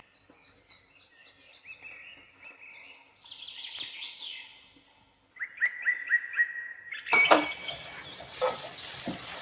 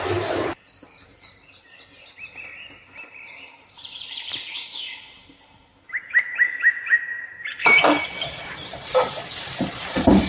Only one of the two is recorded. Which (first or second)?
first